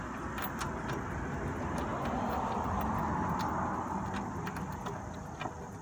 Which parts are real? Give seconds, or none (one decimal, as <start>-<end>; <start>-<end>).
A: 0.0-5.8